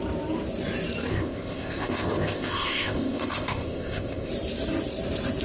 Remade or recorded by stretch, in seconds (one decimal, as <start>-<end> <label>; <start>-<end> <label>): 0.0-1.1 recorded; 1.1-4.3 remade; 4.3-5.4 recorded